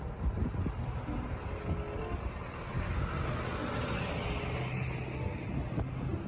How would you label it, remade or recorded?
recorded